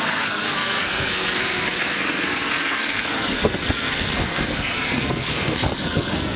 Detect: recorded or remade remade